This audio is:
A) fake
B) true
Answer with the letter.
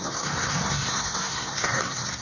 A